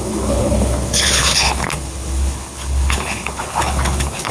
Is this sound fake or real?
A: fake